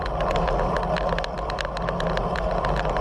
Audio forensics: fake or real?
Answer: real